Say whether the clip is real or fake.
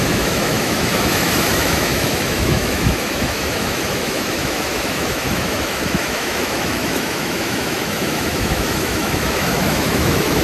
fake